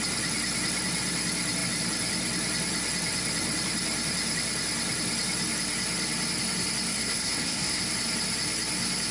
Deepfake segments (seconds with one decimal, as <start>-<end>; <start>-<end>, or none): 6.9-7.8